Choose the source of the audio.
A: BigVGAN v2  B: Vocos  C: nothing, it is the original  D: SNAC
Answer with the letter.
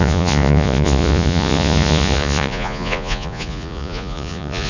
B